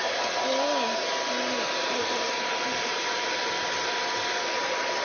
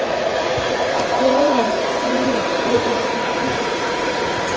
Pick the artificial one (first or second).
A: second